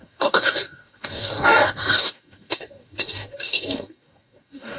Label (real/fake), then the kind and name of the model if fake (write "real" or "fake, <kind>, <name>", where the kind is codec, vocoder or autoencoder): fake, codec, DAC